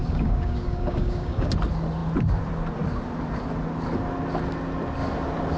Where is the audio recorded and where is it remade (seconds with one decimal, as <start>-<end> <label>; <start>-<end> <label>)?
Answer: 0.0-1.5 remade; 1.5-5.6 recorded